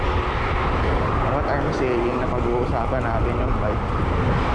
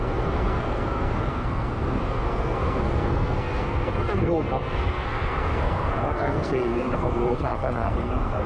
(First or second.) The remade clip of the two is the second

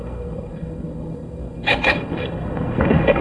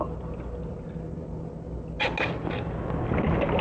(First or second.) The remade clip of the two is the first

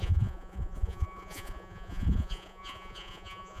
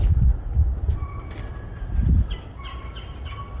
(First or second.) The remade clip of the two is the first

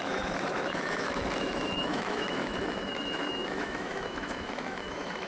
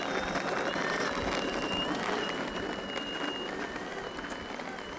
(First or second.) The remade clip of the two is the first